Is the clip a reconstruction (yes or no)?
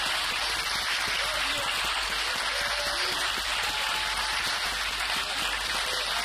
no